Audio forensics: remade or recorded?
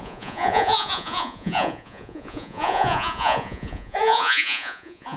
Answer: remade